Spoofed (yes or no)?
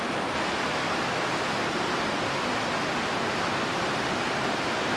no